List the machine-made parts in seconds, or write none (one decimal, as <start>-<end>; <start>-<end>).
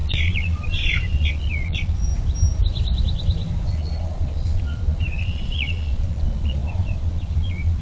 0.0-2.1; 3.7-7.8